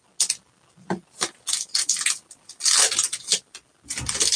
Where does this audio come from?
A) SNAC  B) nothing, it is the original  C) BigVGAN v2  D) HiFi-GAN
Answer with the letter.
B